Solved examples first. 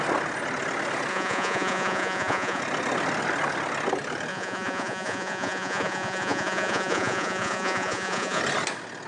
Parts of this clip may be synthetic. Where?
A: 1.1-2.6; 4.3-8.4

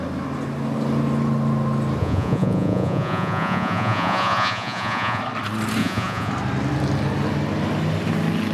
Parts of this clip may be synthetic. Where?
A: 2.0-5.2; 5.8-6.3

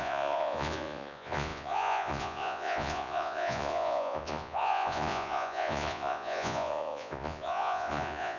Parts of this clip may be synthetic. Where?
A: 0.0-8.4